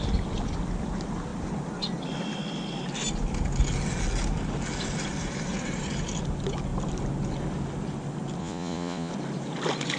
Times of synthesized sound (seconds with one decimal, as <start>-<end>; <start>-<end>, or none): 8.4-9.1